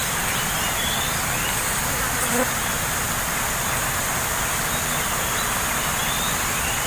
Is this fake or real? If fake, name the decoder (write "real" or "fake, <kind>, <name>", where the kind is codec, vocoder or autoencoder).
real